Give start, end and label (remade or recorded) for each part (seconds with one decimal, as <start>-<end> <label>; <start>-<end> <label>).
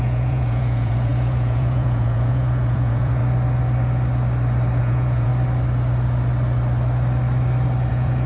0.0-3.2 remade; 3.2-4.8 recorded; 4.8-5.3 remade; 5.3-7.9 recorded; 7.9-8.3 remade